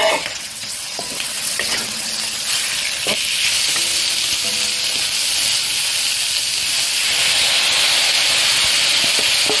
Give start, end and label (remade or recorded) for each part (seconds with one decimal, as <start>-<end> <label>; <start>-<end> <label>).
0.0-2.1 remade; 2.1-9.6 recorded